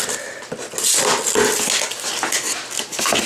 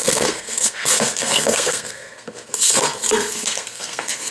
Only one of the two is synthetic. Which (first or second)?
second